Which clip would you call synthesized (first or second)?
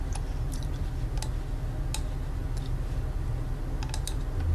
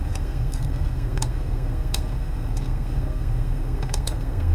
second